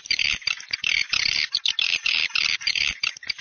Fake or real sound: real